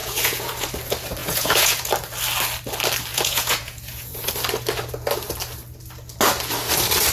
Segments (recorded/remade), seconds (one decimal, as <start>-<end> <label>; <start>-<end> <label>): 0.0-0.7 remade; 0.7-1.2 recorded; 1.2-1.9 remade; 1.9-3.1 recorded; 3.1-4.3 remade; 4.3-7.1 recorded